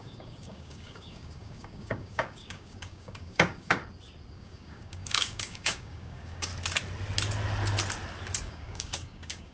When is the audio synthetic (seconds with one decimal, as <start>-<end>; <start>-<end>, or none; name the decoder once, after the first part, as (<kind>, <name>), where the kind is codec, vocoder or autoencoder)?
0.0-3.8 (codec, DAC); 4.3-6.5; 8.4-9.5